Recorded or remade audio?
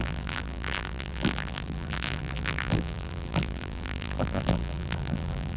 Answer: remade